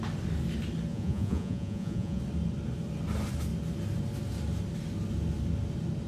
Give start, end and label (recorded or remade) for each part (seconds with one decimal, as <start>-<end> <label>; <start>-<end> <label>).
0.0-0.9 recorded; 0.9-2.2 remade; 2.2-6.1 recorded